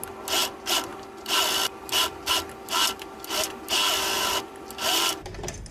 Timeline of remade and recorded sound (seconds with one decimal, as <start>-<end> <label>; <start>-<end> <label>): 0.0-5.7 recorded